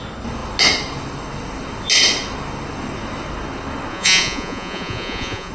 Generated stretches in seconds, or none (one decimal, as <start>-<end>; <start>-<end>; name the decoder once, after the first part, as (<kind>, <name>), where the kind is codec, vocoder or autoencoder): 3.9-5.5 (vocoder, Vocos)